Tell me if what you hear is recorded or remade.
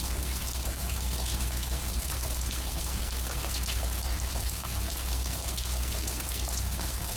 remade